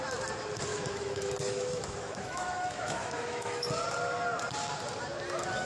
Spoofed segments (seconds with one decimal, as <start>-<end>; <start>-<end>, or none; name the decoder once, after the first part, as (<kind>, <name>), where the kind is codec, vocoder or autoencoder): 0.7-3.7 (autoencoder, DAC-VAE)